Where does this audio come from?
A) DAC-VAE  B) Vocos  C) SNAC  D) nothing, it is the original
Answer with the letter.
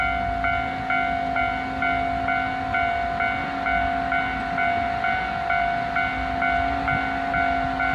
D